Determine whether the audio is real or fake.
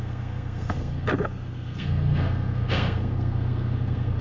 fake